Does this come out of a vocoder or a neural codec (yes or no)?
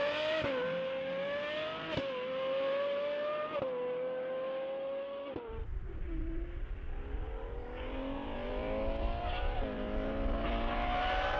no